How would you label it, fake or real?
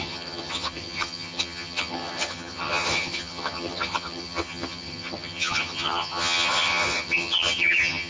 fake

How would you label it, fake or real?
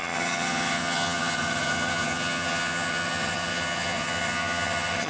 fake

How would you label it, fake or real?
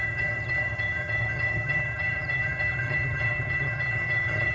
fake